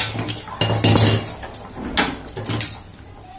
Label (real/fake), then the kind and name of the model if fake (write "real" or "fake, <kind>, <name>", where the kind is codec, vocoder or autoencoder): real